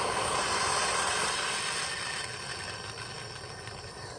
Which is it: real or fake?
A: real